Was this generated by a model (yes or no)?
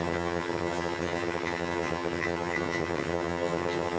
yes